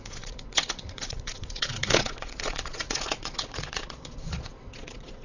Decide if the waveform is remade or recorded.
remade